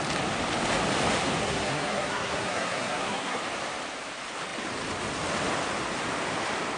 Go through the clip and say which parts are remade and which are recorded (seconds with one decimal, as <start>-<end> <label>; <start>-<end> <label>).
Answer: 0.0-1.4 recorded; 1.4-3.4 remade; 3.4-6.8 recorded